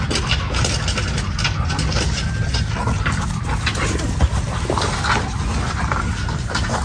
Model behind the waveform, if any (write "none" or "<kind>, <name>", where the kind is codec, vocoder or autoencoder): none